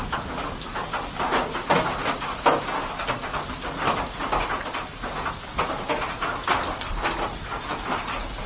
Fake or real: real